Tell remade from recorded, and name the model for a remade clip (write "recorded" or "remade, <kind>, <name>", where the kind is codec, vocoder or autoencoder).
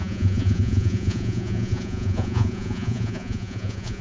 remade, vocoder, Vocos